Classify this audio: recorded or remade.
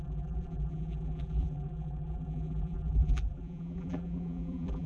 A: remade